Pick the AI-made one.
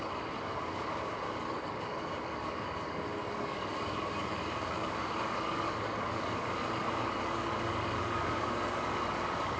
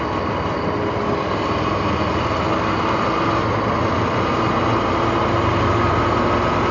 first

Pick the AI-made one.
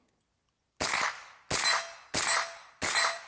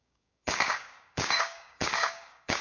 second